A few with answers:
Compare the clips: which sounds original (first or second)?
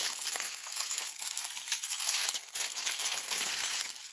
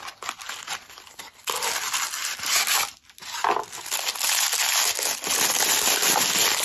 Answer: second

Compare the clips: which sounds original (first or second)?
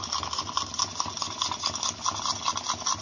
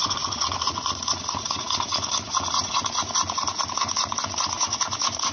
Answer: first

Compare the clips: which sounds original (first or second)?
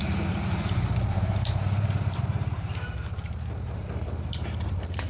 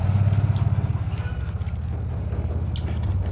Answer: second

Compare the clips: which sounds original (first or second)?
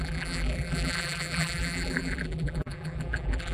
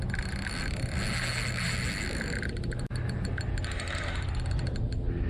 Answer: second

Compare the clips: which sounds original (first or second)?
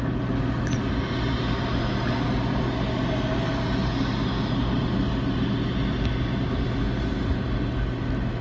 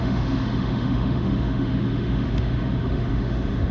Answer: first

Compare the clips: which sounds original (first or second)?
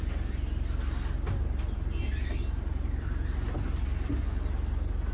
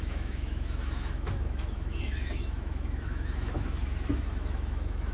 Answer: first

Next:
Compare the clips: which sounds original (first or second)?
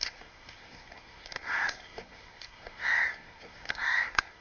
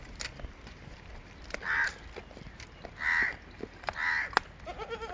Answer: second